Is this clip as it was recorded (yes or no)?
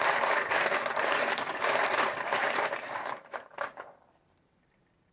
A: no